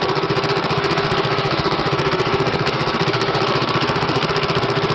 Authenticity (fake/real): fake